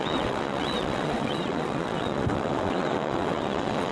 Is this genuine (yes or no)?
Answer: no